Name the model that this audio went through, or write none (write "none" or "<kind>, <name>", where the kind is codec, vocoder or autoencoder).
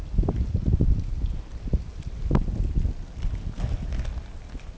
none